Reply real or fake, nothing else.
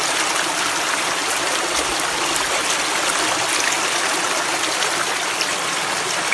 real